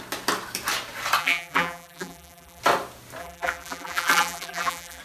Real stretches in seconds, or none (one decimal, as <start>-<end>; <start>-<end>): 0.0-1.2; 2.6-3.2